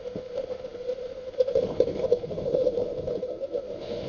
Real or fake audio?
fake